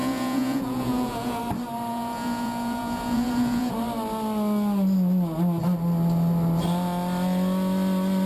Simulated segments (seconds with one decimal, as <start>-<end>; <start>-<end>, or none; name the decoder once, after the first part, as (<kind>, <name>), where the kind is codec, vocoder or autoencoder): 0.0-1.4 (vocoder, Vocos); 1.9-3.7